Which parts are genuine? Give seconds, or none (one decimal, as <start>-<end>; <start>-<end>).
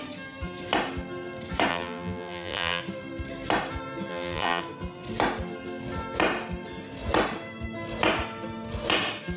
0.0-1.7; 2.8-4.1; 4.6-9.4